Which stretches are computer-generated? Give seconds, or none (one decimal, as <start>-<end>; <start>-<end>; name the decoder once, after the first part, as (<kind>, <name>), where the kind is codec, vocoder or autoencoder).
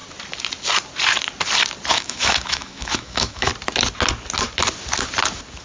1.9-3.5 (autoencoder, DAC-VAE)